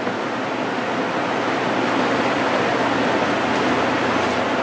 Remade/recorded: recorded